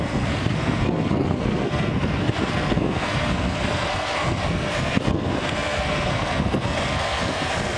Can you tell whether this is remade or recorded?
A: remade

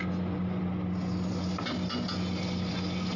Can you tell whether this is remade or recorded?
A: recorded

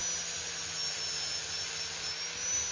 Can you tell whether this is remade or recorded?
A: recorded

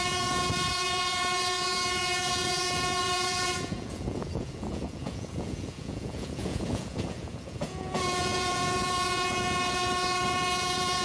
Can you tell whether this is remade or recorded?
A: remade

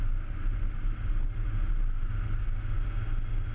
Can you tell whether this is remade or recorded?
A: recorded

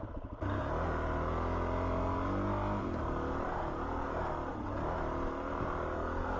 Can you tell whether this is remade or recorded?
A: recorded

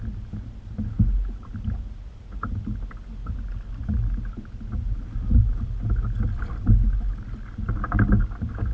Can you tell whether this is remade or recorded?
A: recorded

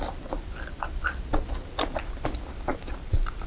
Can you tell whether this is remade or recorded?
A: recorded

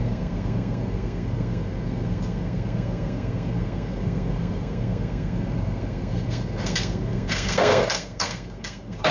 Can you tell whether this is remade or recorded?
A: remade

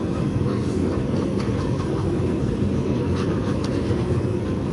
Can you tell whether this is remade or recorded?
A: remade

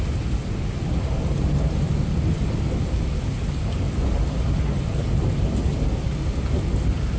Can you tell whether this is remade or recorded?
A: recorded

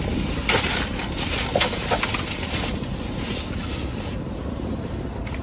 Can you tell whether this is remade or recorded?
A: recorded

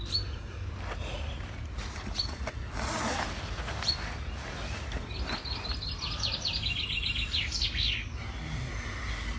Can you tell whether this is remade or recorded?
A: recorded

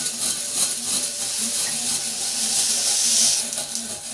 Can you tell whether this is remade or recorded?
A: recorded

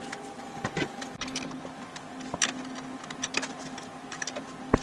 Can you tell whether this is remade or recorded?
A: recorded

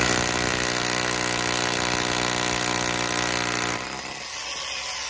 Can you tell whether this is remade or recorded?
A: recorded